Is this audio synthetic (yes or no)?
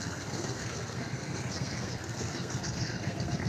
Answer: yes